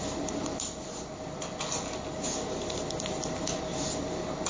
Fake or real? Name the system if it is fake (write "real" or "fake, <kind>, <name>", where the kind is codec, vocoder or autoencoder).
real